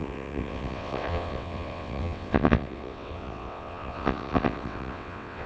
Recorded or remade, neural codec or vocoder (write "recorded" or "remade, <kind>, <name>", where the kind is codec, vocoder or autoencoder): remade, vocoder, WaveNeXt